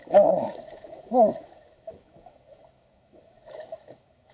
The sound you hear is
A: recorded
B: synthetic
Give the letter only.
B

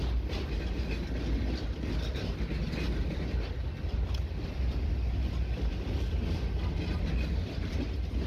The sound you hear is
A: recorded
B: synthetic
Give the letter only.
A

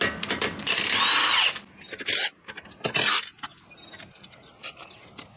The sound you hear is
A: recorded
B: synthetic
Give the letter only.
A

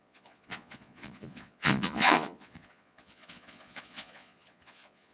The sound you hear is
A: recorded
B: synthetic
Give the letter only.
B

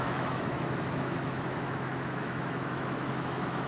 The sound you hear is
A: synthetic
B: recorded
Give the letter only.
A